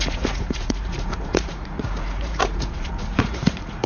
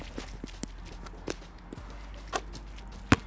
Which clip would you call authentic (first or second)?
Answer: second